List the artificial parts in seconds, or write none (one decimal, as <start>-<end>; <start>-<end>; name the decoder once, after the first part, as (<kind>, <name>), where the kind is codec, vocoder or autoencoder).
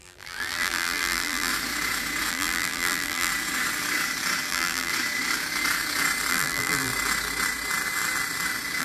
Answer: 0.0-1.5 (vocoder, BigVGAN v2); 2.3-3.3; 4.5-4.9; 6.3-6.9